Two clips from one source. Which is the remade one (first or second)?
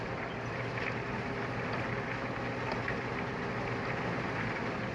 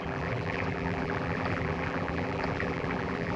second